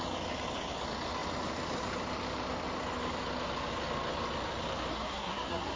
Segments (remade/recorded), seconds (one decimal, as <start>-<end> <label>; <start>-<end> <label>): 0.0-4.9 recorded; 4.9-5.8 remade